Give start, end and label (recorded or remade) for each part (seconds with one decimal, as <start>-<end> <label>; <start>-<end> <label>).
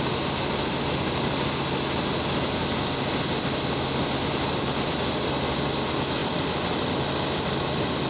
0.0-6.2 recorded; 6.2-8.1 remade